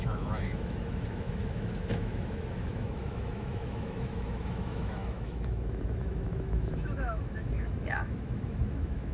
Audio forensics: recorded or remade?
remade